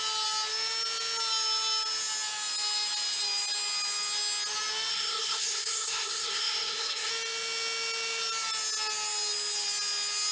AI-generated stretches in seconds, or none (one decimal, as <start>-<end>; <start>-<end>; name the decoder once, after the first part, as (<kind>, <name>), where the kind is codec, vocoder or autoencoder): 4.9-7.1 (codec, SNAC)